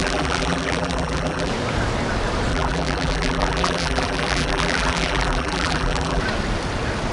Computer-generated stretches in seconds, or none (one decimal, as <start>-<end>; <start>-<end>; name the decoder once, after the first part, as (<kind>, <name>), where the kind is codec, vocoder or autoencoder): 0.0-1.5 (vocoder, BigVGAN v2); 2.5-6.2